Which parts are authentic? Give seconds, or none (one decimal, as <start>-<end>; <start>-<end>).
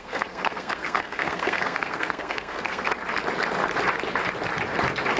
2.9-5.2